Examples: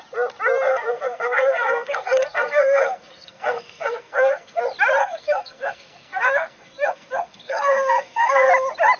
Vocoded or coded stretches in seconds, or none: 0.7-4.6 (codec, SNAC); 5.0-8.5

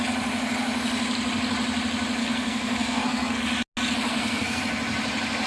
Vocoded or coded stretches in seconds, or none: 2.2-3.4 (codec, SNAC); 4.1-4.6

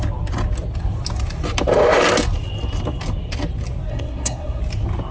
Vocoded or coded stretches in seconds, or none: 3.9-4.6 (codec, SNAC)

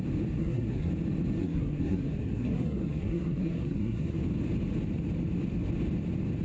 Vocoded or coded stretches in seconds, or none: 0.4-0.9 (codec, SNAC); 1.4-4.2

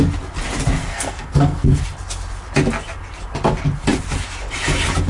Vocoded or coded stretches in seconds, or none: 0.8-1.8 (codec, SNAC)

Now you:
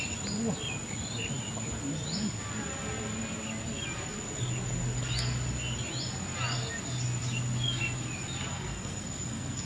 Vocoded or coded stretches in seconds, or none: 8.5-9.7 (codec, SNAC)

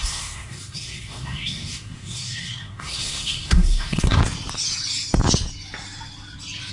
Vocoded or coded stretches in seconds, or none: 0.0-4.2 (codec, SNAC)

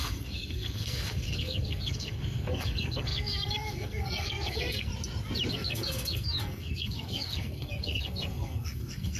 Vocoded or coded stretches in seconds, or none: 0.0-4.9 (codec, SNAC); 5.5-9.2